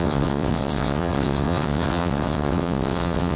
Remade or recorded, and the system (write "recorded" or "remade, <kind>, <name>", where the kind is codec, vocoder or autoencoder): remade, vocoder, WaveNeXt